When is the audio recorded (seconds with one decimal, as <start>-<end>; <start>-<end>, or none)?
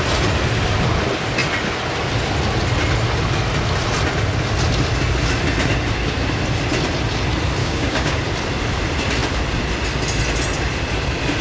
0.0-7.6; 8.2-11.4